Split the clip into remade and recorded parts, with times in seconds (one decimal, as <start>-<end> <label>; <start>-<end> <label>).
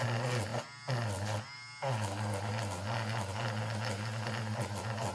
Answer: 0.0-5.1 recorded